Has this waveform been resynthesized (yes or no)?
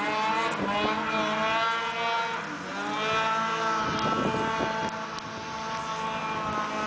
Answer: no